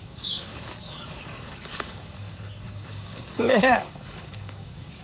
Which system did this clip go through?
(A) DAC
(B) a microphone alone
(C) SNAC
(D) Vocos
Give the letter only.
A